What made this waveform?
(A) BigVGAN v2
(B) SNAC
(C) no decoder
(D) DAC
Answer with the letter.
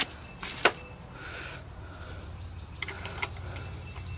C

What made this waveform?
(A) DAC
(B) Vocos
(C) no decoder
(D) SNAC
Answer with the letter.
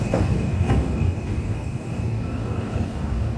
A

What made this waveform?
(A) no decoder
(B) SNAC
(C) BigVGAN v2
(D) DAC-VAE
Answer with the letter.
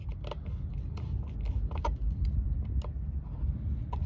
A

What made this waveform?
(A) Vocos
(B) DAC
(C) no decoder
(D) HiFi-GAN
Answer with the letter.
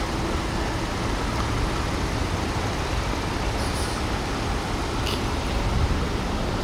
C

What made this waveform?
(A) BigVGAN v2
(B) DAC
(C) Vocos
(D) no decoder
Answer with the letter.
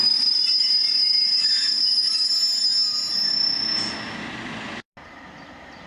D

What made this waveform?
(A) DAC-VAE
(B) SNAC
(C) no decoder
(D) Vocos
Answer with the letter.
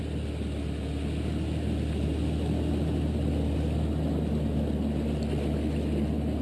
C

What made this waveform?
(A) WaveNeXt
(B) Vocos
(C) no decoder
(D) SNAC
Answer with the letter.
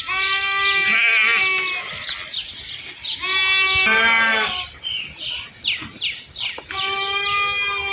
C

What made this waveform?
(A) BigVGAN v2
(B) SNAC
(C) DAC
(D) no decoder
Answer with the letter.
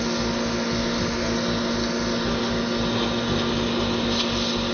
D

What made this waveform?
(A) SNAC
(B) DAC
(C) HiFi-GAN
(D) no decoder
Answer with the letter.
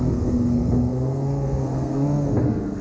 A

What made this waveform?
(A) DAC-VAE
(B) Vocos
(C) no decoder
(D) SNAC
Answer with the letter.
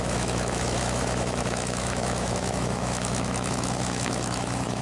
A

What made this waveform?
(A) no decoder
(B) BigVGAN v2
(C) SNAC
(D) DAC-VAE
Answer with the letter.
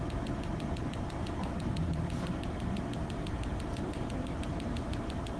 B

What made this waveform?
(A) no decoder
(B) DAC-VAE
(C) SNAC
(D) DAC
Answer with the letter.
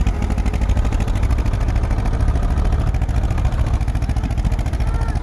A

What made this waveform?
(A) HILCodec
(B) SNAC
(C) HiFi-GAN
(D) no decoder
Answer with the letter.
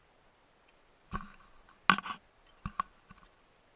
D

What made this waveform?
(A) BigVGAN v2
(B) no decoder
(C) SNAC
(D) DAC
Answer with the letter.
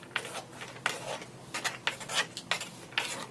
B